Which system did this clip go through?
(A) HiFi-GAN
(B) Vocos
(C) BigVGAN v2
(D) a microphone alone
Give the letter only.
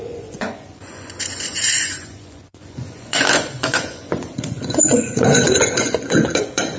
B